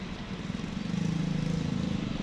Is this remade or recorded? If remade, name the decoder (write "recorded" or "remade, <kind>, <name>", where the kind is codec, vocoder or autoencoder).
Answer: recorded